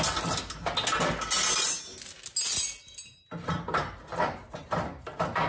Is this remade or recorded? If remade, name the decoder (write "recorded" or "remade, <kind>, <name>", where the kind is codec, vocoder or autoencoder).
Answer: recorded